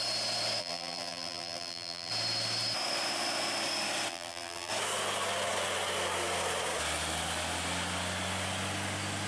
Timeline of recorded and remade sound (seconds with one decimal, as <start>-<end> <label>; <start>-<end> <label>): 0.0-0.6 recorded; 0.6-2.1 remade; 2.1-4.1 recorded; 4.1-4.7 remade; 4.7-9.3 recorded

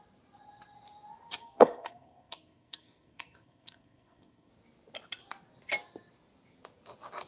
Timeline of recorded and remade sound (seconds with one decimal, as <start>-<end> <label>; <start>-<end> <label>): 0.0-1.4 recorded; 1.4-4.5 remade; 4.5-7.3 recorded

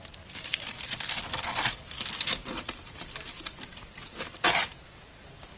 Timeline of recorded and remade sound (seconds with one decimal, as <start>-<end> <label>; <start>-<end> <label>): 0.0-0.5 recorded; 0.5-1.0 remade; 1.0-2.4 recorded; 2.4-4.1 remade; 4.1-5.6 recorded